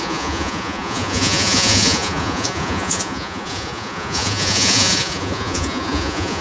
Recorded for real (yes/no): no